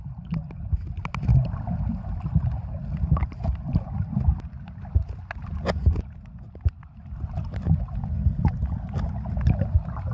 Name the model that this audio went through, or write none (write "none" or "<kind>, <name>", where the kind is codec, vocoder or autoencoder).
none